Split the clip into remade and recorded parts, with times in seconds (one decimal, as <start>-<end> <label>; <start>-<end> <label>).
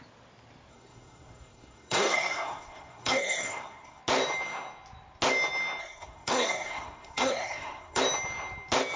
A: 0.0-0.7 recorded; 0.7-4.0 remade; 4.0-5.8 recorded; 5.8-8.0 remade; 8.0-9.0 recorded